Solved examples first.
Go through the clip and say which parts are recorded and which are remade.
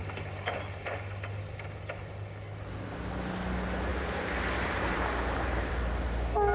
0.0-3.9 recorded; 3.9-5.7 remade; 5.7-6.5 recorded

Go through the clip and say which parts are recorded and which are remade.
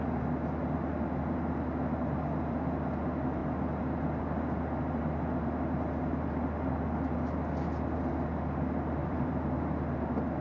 0.0-9.0 recorded; 9.0-10.4 remade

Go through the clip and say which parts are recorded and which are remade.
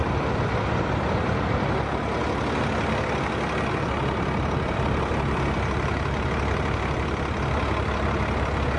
0.0-8.8 recorded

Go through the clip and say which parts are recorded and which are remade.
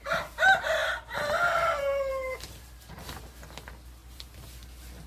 0.0-5.1 recorded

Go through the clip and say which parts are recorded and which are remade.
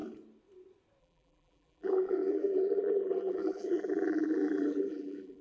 0.0-1.0 recorded; 1.0-5.4 remade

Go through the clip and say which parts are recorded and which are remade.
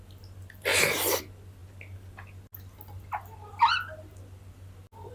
0.0-0.7 recorded; 0.7-1.2 remade; 1.2-5.1 recorded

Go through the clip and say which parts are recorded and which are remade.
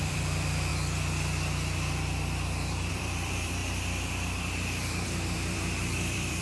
0.0-0.7 remade; 0.7-2.9 recorded; 2.9-6.4 remade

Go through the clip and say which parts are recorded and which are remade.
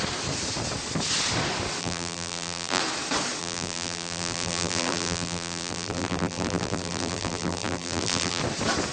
0.0-1.8 recorded; 1.8-2.8 remade; 2.8-3.4 recorded; 3.4-8.4 remade; 8.4-8.9 recorded